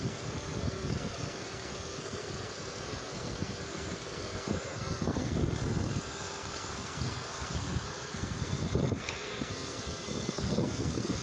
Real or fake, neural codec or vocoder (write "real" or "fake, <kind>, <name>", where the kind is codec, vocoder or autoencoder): fake, codec, SNAC